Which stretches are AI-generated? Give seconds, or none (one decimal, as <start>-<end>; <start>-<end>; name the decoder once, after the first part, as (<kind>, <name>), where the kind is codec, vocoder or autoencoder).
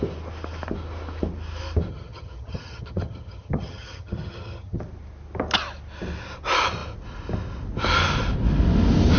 1.9-4.8 (vocoder, HiFi-GAN)